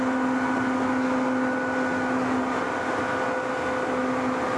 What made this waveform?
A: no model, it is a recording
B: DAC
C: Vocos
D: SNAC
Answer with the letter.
A